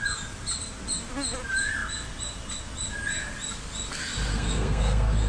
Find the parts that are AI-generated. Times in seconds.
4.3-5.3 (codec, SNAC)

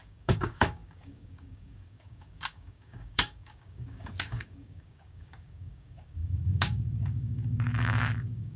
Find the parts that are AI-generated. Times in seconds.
0.0-8.6 (codec, DAC)

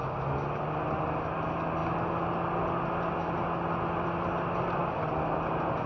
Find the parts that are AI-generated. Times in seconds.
none